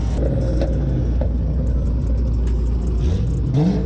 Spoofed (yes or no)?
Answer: no